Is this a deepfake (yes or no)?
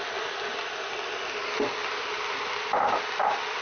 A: no